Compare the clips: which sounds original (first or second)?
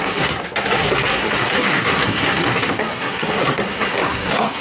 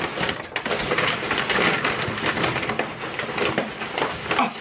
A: second